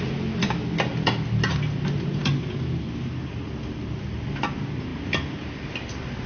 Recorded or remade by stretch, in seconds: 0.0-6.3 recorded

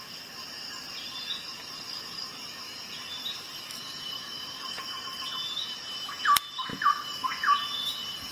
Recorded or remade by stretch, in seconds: 0.0-6.7 recorded; 6.7-8.3 remade